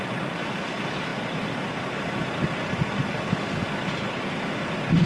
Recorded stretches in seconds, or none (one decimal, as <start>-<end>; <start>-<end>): 0.0-5.1